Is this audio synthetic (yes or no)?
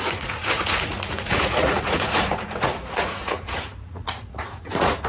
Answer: yes